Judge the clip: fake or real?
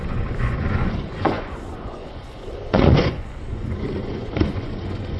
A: fake